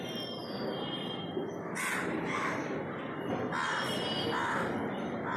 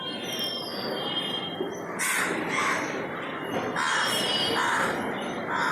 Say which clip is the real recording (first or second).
first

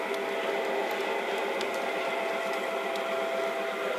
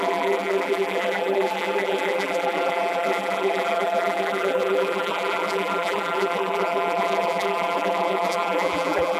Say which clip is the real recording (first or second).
first